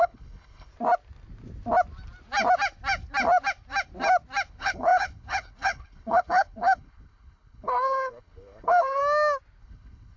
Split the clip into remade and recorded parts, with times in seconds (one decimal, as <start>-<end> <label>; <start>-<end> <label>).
0.0-0.7 remade; 0.7-4.5 recorded; 4.5-9.0 remade; 9.0-9.6 recorded; 9.6-10.2 remade